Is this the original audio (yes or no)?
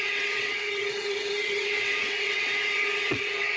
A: no